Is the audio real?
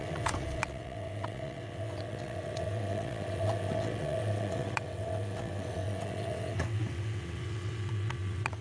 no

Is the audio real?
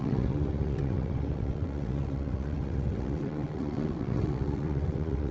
no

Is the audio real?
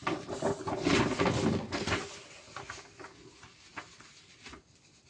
yes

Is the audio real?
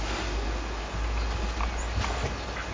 yes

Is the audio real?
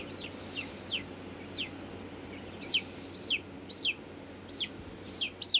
yes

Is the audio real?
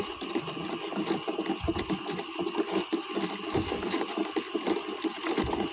yes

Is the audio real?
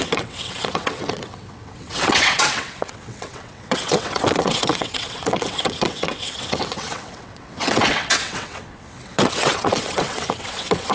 no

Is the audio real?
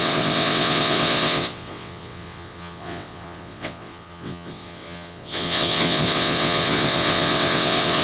no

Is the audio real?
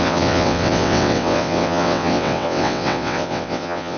no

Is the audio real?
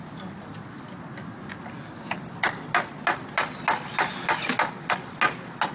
yes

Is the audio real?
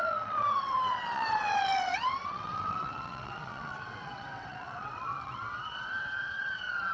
no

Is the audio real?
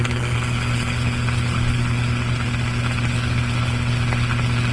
yes